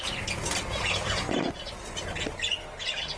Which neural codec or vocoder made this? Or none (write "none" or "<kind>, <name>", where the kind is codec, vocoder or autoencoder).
none